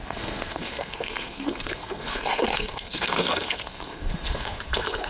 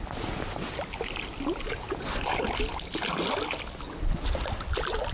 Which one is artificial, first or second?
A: first